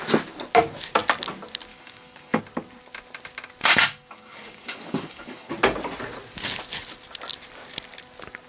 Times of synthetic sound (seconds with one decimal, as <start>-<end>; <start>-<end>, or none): 1.7-2.4; 3.6-5.5